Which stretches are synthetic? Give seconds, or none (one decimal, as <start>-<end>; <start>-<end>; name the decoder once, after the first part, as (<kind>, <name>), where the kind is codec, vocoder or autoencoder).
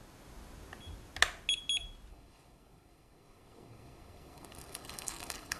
2.1-5.6 (codec, SNAC)